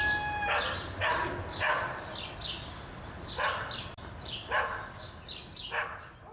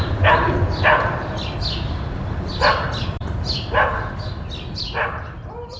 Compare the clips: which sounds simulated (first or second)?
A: second